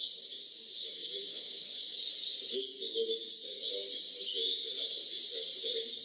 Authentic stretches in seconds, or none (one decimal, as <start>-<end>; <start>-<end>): 0.0-0.8; 2.0-6.0